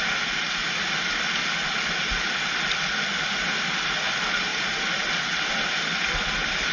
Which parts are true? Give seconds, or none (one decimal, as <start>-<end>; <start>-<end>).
0.0-6.7